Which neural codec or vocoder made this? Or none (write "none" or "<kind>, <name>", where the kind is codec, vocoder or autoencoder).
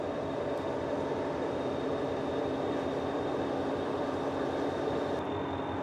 vocoder, BigVGAN v2